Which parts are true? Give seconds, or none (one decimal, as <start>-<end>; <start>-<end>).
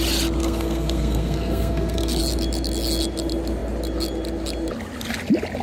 0.0-0.4; 2.2-5.6